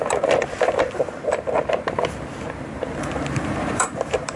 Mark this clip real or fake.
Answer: fake